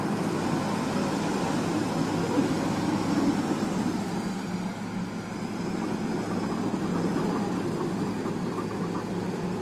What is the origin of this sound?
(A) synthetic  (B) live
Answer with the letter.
B